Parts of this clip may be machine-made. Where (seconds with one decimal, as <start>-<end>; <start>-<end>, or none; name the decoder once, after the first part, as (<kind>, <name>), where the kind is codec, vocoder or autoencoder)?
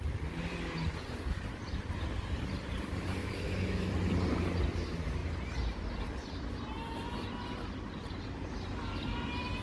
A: 3.2-3.9 (autoencoder, DAC-VAE)